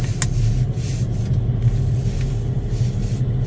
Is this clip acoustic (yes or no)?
yes